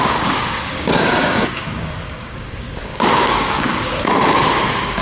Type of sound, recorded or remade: remade